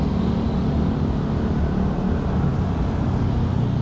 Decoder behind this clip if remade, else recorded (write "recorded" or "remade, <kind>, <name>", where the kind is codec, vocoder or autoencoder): recorded